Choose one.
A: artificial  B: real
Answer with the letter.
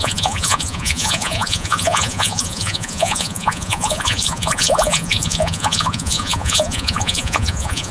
A